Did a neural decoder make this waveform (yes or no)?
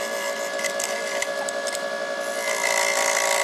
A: no